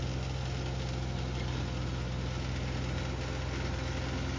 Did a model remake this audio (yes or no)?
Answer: no